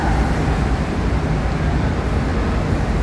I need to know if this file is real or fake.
real